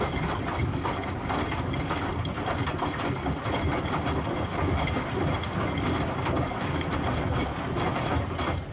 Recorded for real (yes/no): yes